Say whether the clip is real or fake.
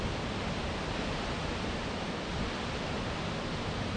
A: real